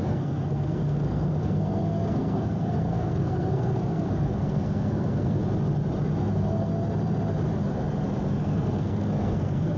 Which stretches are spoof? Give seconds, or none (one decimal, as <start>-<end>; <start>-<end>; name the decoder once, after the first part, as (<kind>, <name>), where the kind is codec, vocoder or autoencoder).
0.0-5.4 (codec, SNAC); 6.3-6.7; 8.4-9.8